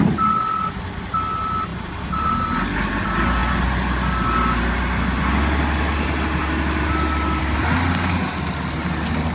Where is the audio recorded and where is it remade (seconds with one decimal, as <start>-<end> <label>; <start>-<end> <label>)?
0.0-9.3 recorded